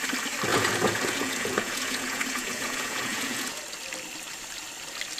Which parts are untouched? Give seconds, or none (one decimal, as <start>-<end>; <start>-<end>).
0.0-0.5; 3.6-5.2